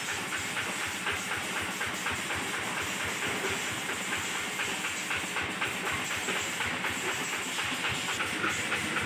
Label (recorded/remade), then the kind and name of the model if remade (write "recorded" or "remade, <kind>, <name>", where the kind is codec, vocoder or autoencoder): recorded